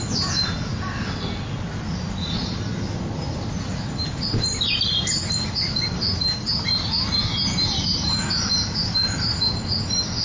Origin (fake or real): real